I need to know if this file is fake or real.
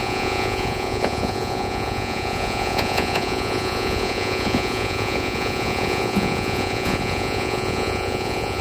fake